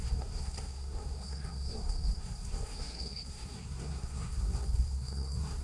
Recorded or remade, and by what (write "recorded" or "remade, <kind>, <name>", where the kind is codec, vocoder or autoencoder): remade, codec, SNAC